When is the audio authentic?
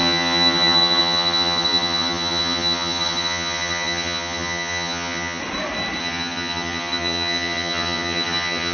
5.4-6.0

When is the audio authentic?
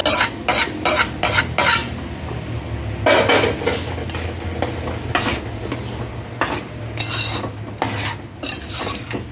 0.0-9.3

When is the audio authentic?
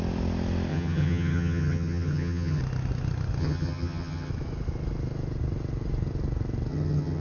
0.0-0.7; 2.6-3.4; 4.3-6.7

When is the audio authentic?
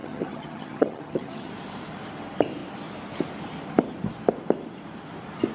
1.5-5.5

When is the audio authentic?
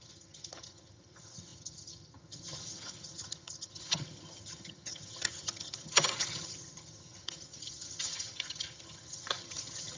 none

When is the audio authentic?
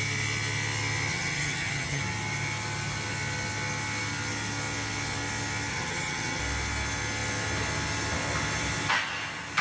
0.0-1.1; 2.0-5.7; 6.4-9.6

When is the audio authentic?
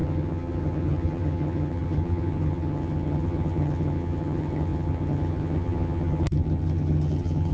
none